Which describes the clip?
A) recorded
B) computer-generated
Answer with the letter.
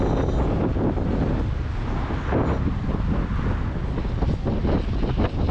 A